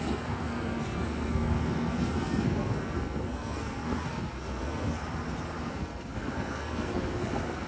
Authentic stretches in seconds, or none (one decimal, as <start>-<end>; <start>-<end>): 5.0-5.7